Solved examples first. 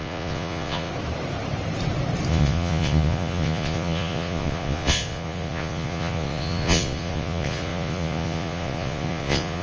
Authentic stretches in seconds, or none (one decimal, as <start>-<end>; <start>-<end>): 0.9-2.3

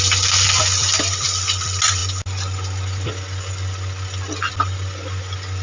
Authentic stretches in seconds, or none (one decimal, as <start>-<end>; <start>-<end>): 0.0-5.6

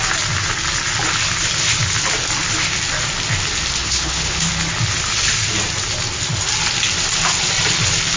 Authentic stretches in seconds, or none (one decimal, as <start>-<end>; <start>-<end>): 0.0-3.8; 4.5-8.2

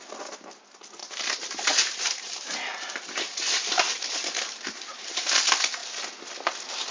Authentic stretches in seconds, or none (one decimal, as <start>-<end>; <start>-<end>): 0.0-1.0; 5.1-6.9

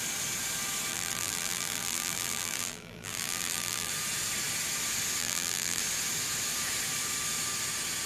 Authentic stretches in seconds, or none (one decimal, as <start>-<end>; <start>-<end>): 0.0-0.9; 3.9-5.2; 5.8-8.1

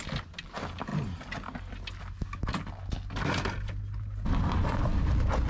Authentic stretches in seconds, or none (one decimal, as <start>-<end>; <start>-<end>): 0.0-5.5

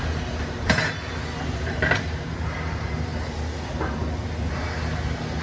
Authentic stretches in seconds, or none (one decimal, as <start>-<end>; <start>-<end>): 0.8-1.4; 3.1-5.4